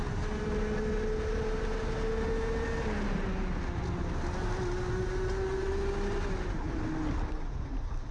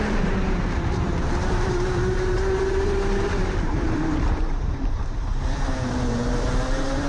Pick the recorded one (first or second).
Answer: first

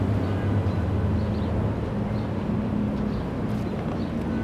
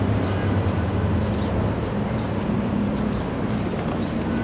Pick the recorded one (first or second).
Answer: first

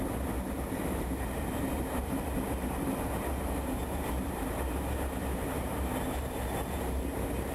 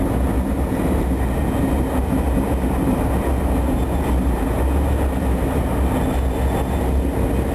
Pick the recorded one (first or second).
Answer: second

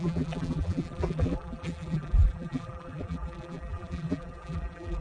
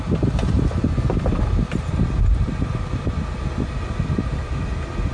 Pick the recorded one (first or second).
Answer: second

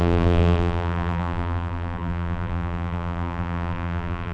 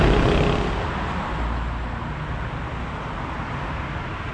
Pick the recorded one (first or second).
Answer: second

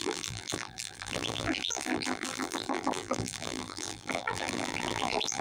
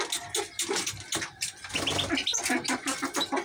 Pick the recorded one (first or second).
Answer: second